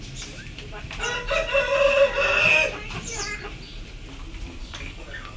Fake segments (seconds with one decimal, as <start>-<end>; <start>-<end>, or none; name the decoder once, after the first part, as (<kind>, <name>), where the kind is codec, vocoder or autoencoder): 4.6-5.4 (codec, DAC)